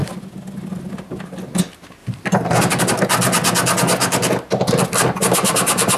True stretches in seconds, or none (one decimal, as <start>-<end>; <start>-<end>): 0.0-2.0; 2.6-5.2